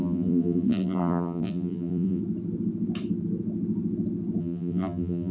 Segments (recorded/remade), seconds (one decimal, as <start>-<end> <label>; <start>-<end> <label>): 0.0-2.2 remade; 2.2-4.4 recorded; 4.4-5.3 remade